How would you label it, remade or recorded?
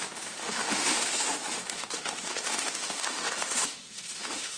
remade